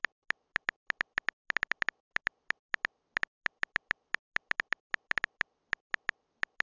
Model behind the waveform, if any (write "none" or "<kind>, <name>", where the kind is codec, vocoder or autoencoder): none